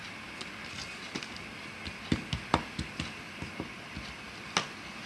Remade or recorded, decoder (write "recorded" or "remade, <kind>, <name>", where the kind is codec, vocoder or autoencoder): recorded